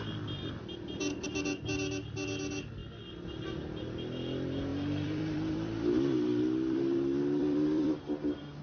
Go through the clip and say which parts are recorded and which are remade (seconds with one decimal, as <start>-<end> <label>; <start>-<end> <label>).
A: 0.0-4.7 recorded; 4.7-8.0 remade; 8.0-8.6 recorded